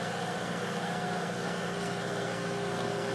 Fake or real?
fake